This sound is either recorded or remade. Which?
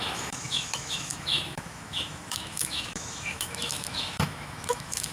remade